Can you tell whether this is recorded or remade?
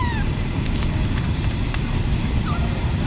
remade